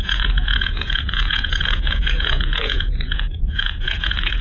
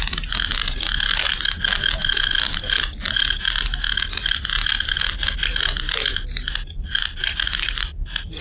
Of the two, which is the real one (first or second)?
second